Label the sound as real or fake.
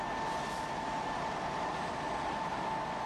real